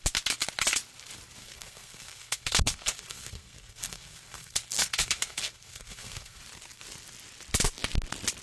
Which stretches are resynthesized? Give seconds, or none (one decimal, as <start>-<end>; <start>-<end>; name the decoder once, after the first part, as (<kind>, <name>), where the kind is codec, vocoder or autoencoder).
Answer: 1.4-6.4 (codec, SNAC)